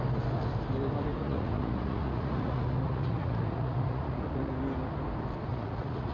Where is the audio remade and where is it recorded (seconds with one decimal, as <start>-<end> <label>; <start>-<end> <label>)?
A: 0.0-1.2 recorded; 1.2-4.5 remade; 4.5-5.5 recorded; 5.5-6.1 remade